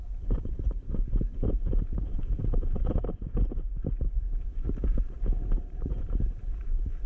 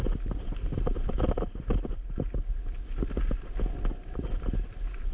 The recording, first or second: second